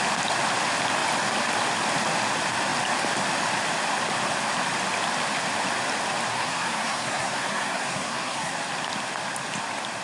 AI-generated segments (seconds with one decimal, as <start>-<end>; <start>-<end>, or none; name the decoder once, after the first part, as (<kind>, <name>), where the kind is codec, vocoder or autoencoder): 6.3-8.5 (codec, SNAC)